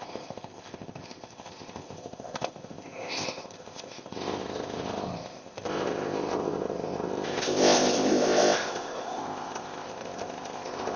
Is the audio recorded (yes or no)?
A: no